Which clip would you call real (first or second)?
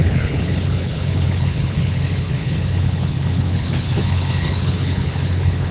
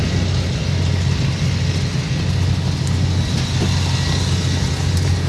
second